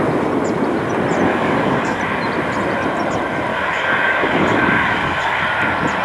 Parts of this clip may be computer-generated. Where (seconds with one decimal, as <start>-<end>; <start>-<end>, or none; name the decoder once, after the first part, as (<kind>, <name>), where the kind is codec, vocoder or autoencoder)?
1.3-2.0 (codec, DAC); 3.5-5.4